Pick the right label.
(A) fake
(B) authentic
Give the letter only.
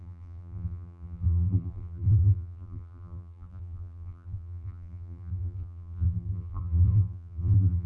A